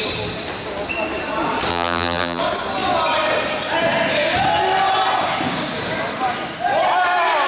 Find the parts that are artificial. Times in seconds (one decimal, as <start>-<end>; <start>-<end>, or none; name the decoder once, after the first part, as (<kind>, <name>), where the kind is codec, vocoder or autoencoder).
1.7-2.4 (vocoder, BigVGAN v2)